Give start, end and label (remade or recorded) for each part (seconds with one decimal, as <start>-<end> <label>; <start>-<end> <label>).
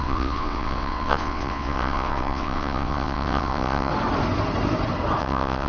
0.0-3.9 remade; 3.9-5.2 recorded; 5.2-5.7 remade